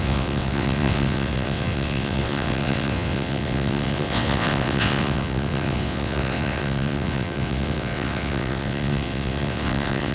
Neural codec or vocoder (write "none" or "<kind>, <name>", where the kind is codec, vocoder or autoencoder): vocoder, WaveNeXt